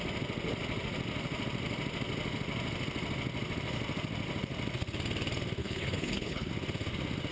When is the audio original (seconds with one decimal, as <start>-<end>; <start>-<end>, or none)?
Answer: 0.0-5.6; 6.5-7.3